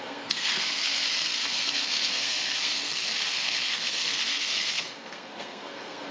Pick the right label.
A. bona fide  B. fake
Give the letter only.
B